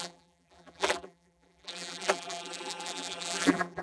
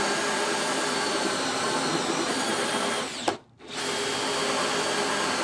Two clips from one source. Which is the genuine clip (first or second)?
second